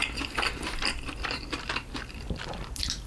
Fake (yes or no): yes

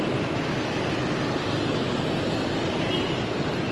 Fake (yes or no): no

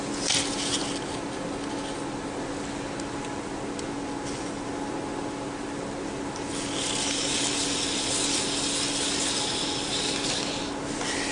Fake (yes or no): no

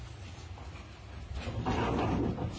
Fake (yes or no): no